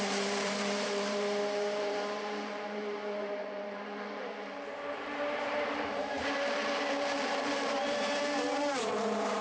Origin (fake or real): fake